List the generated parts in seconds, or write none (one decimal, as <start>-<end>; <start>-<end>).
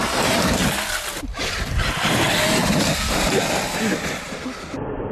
0.0-0.6; 1.4-5.1